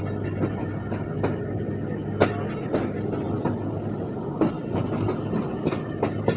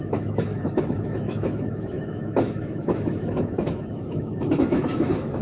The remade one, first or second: second